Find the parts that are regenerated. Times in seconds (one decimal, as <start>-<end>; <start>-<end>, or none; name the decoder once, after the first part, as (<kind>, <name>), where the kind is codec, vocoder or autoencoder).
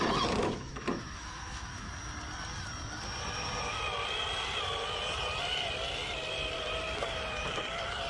0.4-1.9 (autoencoder, DAC-VAE)